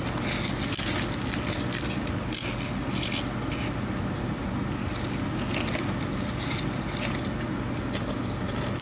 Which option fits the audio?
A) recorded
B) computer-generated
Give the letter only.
A